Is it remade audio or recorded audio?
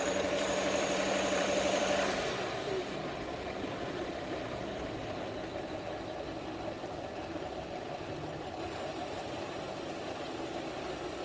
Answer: remade